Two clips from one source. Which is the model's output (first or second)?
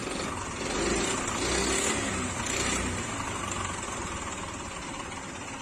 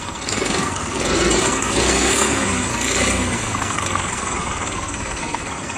second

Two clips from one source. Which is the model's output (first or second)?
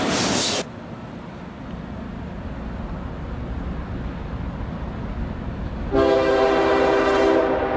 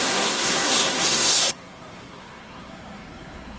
second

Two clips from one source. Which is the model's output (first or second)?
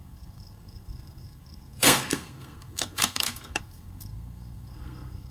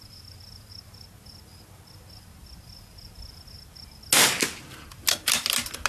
first